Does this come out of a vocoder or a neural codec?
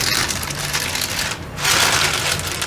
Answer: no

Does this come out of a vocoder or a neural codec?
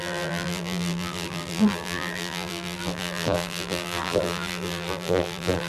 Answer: yes